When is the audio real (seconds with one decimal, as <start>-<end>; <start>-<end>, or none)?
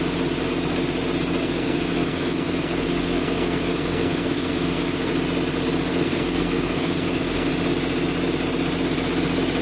0.0-1.4; 5.1-5.9; 7.5-9.6